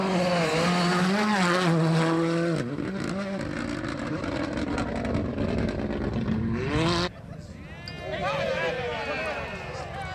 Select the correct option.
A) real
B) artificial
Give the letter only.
A